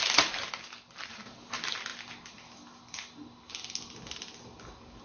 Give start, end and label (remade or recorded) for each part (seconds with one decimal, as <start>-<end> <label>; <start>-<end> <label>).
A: 0.0-5.0 recorded